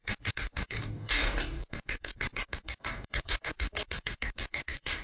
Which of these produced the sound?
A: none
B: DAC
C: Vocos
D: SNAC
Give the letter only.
B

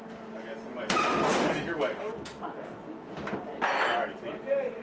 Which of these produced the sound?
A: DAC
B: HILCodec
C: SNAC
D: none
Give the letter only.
D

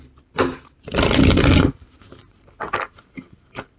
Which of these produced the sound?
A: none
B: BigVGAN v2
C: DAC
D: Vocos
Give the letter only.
A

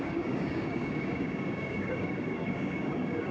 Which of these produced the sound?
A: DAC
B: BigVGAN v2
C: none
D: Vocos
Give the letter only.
A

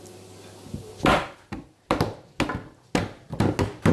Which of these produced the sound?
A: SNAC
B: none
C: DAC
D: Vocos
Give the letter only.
B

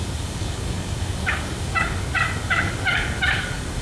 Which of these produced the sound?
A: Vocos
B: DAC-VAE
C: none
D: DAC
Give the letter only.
D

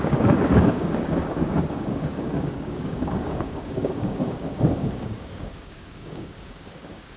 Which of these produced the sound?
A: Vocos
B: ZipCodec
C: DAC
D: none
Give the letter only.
C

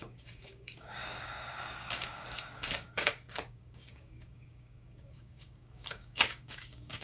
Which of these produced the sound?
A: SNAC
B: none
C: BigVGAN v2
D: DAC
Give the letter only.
D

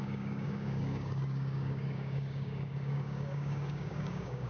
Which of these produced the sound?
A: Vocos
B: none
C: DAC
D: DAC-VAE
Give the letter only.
C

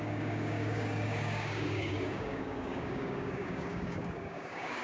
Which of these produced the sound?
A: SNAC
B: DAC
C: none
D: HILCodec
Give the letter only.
B